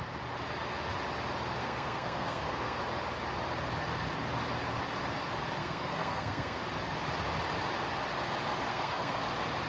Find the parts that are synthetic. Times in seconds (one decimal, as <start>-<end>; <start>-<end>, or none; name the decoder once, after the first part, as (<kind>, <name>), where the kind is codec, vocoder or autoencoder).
1.6-2.8 (codec, SNAC); 5.6-6.6; 8.7-9.2